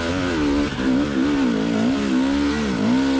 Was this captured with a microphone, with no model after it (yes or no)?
yes